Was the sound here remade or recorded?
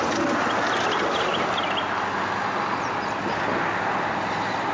recorded